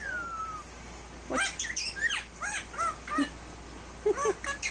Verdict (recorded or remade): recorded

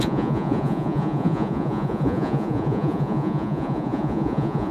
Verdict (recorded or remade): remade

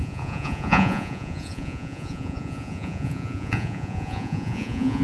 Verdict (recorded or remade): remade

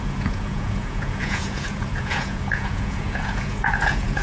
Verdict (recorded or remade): remade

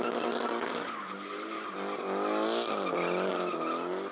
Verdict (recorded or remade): recorded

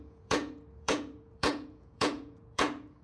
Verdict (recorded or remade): remade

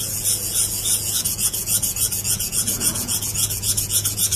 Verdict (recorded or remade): remade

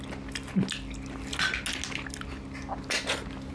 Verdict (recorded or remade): recorded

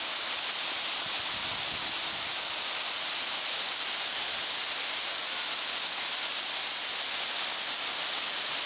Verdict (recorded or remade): recorded